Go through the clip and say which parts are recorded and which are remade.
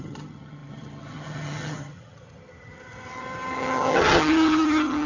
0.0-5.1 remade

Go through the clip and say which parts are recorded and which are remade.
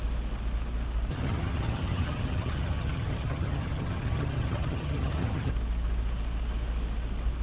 0.0-1.1 recorded; 1.1-5.5 remade; 5.5-7.4 recorded